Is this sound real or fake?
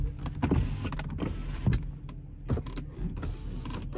real